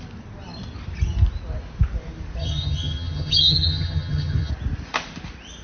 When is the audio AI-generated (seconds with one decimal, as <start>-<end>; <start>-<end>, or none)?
2.4-4.5

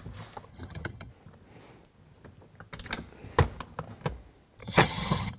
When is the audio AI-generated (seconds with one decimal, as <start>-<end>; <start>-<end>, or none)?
0.5-1.1; 4.6-5.4

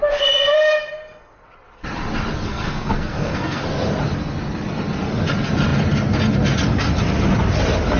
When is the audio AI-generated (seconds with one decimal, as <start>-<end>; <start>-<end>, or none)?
2.5-3.6